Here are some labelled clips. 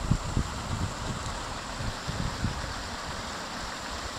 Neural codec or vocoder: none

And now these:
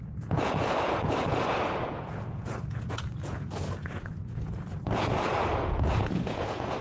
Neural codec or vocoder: vocoder, Vocos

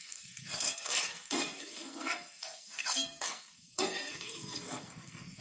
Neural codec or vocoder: codec, SNAC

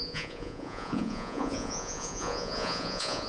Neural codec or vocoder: vocoder, Vocos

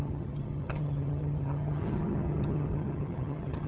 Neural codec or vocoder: vocoder, HiFi-GAN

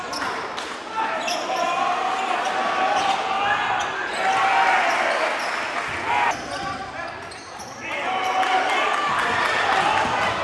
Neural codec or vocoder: none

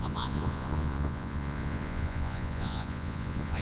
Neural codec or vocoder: vocoder, Vocos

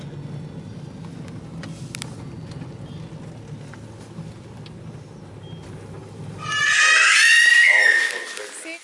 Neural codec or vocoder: none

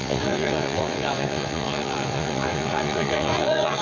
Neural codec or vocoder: vocoder, WaveNeXt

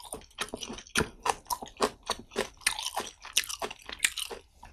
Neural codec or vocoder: none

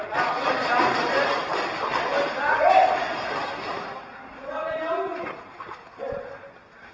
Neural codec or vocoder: none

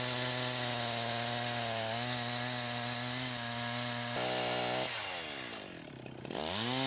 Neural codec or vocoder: none